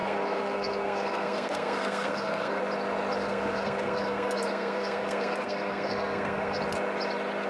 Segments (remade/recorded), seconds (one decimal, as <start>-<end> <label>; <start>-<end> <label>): 0.0-2.6 remade; 2.6-3.2 recorded; 3.2-6.6 remade; 6.6-7.5 recorded